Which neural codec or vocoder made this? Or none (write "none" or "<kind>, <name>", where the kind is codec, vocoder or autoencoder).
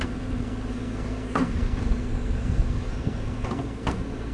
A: codec, SNAC